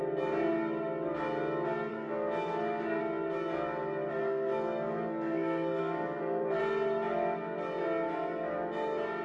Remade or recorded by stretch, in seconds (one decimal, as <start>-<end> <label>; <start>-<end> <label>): 0.0-1.9 recorded; 1.9-3.0 remade; 3.0-4.2 recorded; 4.2-6.6 remade; 6.6-9.2 recorded